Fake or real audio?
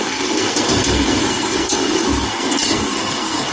fake